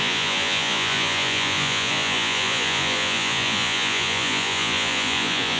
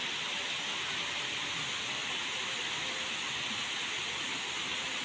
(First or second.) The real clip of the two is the second